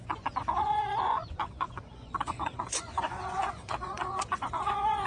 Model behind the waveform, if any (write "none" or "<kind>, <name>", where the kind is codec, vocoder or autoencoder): vocoder, Vocos